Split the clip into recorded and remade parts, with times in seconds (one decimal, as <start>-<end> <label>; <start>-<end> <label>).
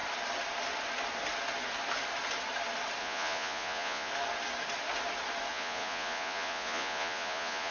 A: 0.0-3.0 recorded; 3.0-4.1 remade; 4.1-5.5 recorded; 5.5-7.7 remade